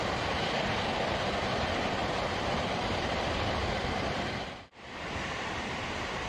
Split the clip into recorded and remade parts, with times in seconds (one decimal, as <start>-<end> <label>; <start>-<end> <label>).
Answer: 0.0-2.0 recorded; 2.0-2.6 remade; 2.6-3.6 recorded; 3.6-6.3 remade